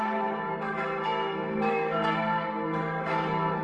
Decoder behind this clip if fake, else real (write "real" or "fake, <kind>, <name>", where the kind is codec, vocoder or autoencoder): fake, codec, SNAC